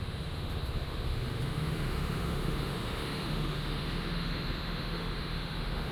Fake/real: fake